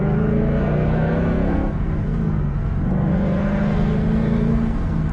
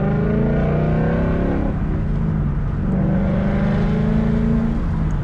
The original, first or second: second